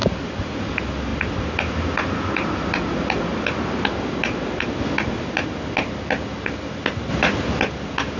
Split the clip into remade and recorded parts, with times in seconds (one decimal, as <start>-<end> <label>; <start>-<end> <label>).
0.0-8.2 recorded